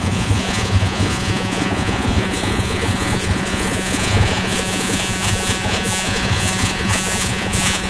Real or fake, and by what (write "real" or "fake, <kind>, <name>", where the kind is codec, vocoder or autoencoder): fake, vocoder, Vocos